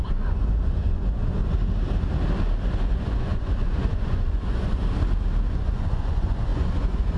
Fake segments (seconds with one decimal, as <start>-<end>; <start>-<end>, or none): 0.0-1.4; 2.9-4.8; 5.5-7.2

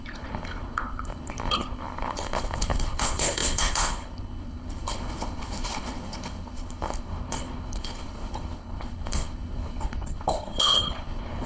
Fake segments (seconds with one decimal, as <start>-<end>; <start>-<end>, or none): 0.0-11.5

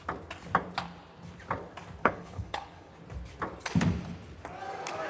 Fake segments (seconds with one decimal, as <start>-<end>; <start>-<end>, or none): 2.0-2.9

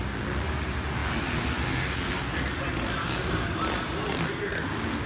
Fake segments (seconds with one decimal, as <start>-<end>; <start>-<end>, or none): 3.0-3.6

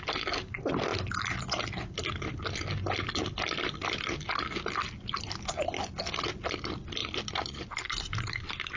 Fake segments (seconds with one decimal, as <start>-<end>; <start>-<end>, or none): none

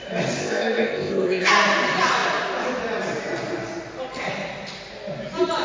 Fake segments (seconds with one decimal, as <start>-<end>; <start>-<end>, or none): 0.4-1.5